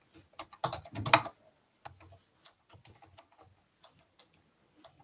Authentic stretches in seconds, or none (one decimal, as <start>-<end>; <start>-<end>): 0.0-5.0